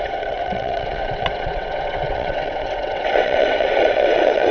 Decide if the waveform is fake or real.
fake